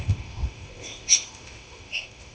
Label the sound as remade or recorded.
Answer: remade